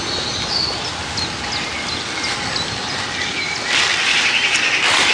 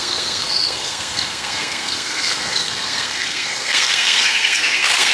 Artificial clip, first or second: second